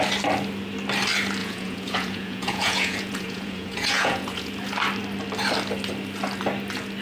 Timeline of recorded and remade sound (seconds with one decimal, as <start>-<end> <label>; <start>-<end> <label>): 0.0-1.4 recorded; 1.4-4.5 remade; 4.5-7.0 recorded